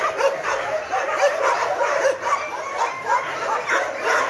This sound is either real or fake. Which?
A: real